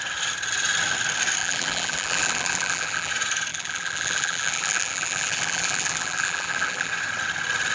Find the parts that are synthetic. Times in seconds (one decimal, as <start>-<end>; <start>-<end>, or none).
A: 1.4-3.1; 3.5-6.9